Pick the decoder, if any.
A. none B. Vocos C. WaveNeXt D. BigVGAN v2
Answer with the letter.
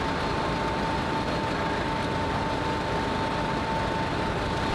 A